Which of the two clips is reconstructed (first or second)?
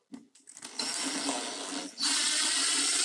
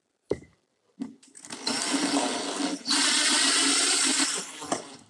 second